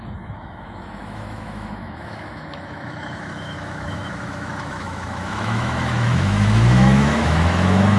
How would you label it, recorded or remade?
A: remade